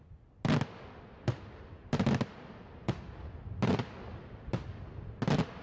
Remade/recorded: recorded